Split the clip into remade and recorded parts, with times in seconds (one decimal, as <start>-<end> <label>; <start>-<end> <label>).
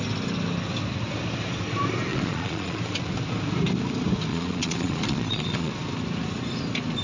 0.0-2.1 recorded; 2.1-2.8 remade; 2.8-4.3 recorded; 4.3-5.7 remade; 5.7-7.0 recorded